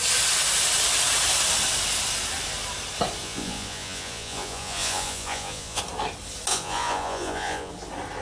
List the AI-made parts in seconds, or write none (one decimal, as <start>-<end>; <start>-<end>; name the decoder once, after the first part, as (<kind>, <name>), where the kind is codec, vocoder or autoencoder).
3.2-5.8 (vocoder, Vocos); 6.5-7.7